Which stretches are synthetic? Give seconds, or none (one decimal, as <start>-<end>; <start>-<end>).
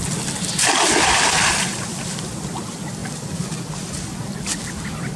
none